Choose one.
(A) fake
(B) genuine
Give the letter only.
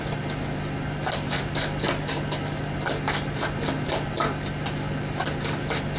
B